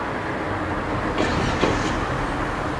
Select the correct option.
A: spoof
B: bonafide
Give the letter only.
B